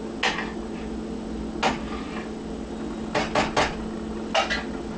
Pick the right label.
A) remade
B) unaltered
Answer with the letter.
B